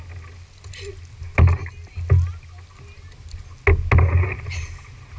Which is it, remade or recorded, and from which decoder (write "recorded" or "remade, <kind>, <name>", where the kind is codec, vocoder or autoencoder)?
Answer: recorded